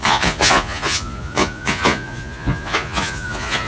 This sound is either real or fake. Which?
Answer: fake